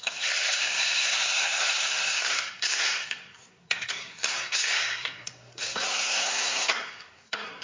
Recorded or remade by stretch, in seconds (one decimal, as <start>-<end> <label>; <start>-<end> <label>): 0.0-7.6 remade